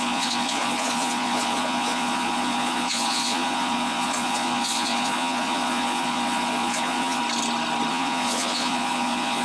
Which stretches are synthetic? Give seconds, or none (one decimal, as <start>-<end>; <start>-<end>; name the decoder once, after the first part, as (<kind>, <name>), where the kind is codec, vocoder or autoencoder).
0.0-7.2 (vocoder, Vocos); 7.9-9.4